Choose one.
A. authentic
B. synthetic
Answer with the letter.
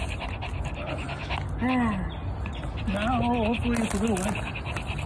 A